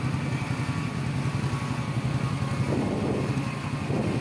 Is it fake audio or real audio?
real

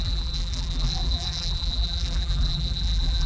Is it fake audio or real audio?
fake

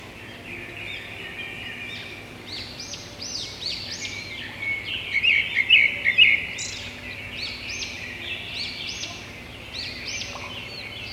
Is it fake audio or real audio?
real